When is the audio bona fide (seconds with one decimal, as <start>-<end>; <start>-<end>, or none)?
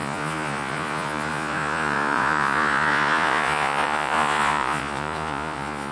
none